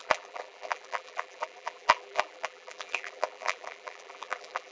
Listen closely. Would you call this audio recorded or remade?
remade